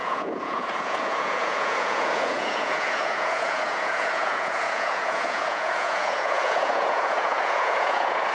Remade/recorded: remade